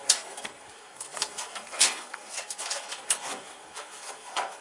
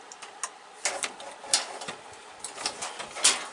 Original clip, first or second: second